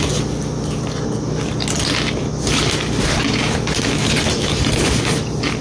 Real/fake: real